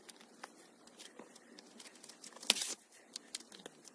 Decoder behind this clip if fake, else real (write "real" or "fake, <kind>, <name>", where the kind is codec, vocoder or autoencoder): real